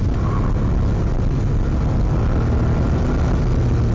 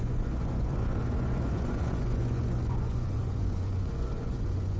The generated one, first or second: second